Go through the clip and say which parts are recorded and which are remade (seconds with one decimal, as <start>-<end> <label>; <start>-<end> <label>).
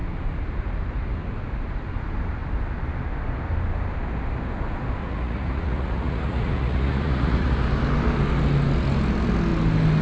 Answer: 0.0-5.0 recorded; 5.0-7.5 remade; 7.5-10.0 recorded